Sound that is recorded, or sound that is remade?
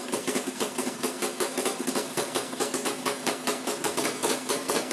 remade